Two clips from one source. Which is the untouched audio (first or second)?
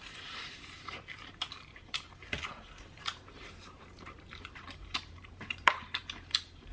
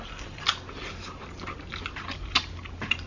second